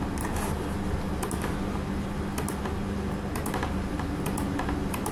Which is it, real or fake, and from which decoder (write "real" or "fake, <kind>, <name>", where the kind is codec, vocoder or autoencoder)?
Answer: real